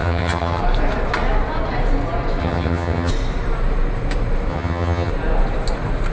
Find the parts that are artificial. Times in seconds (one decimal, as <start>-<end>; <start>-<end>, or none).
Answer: 0.0-0.6; 2.4-3.1; 4.5-5.1